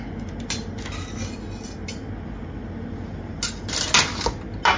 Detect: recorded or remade recorded